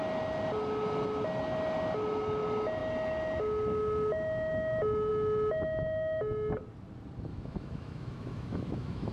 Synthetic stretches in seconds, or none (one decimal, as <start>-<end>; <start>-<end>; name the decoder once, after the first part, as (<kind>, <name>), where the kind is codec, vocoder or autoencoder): 7.3-9.1 (autoencoder, DAC-VAE)